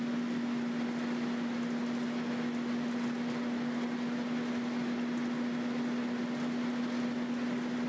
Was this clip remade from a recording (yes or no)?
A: no